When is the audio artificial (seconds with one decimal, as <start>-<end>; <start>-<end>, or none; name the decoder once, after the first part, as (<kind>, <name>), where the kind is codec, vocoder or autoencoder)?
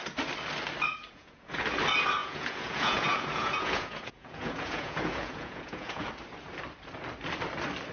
1.0-1.6 (vocoder, Vocos); 2.2-6.1